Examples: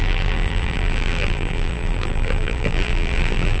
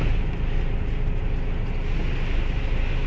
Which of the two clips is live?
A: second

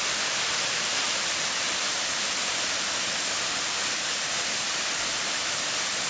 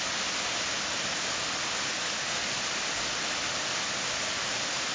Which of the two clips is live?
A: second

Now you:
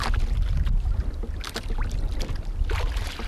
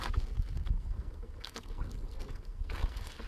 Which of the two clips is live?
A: first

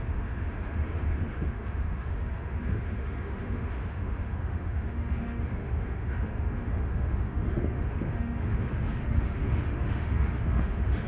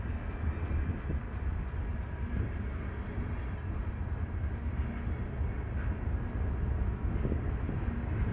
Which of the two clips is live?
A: second